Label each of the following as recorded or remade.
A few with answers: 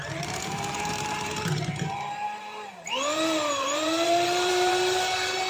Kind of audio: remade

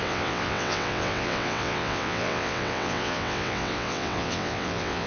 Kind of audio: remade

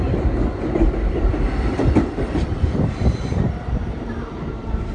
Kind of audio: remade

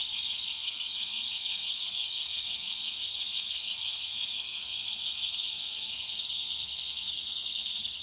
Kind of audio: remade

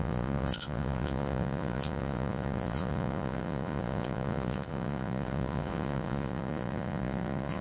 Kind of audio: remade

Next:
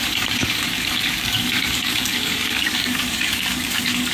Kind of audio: remade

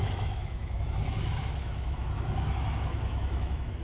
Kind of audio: remade